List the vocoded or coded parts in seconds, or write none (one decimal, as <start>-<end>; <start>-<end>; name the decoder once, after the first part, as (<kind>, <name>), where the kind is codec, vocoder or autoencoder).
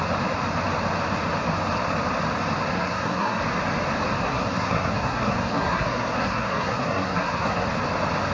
2.7-3.4 (codec, SNAC); 4.2-7.7